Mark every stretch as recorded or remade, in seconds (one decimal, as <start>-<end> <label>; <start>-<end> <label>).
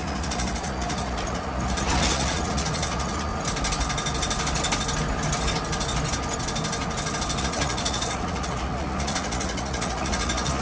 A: 0.0-3.3 remade; 3.3-7.4 recorded; 7.4-10.6 remade